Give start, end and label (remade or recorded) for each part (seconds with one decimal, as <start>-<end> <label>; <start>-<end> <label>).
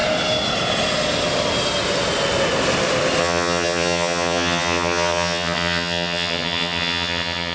0.0-3.2 recorded; 3.2-7.5 remade